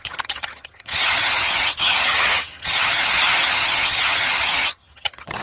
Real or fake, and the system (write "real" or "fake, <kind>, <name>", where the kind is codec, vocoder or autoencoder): fake, vocoder, HiFi-GAN